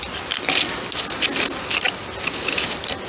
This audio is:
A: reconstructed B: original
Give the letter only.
B